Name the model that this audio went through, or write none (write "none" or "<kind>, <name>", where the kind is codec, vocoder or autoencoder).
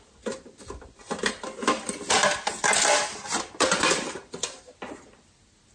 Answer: none